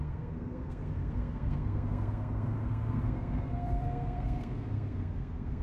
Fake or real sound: fake